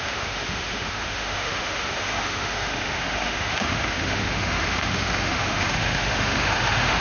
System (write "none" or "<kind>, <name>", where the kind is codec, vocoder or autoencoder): autoencoder, DAC-VAE